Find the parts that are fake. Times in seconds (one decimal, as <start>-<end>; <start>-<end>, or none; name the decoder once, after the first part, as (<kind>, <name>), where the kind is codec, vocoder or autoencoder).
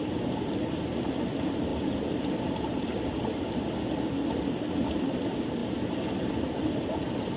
none